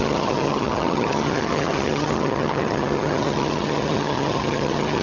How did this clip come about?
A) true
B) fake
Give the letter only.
B